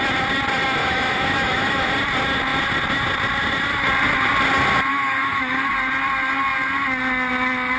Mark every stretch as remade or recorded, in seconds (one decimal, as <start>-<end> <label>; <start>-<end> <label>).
0.0-0.8 recorded; 0.8-1.9 remade; 1.9-4.9 recorded; 4.9-5.7 remade; 5.7-7.8 recorded

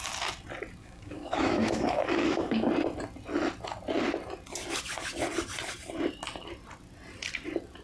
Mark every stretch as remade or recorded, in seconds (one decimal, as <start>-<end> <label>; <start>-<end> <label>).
0.0-0.8 recorded; 0.8-2.7 remade; 2.7-7.8 recorded

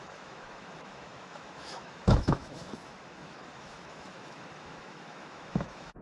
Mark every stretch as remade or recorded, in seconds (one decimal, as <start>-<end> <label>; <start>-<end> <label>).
0.0-6.0 remade

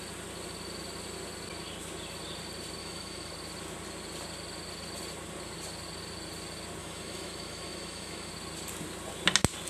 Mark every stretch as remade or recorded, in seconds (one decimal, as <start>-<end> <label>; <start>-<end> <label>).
0.0-2.8 recorded; 2.8-3.3 remade; 3.3-6.8 recorded; 6.8-8.3 remade; 8.3-9.7 recorded

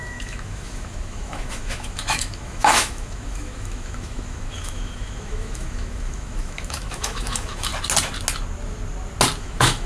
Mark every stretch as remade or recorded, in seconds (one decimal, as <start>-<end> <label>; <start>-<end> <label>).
0.0-7.7 remade; 7.7-9.4 recorded; 9.4-9.9 remade